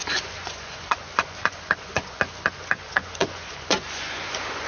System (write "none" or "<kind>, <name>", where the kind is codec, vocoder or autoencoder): vocoder, Vocos